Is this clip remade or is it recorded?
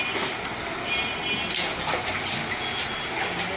recorded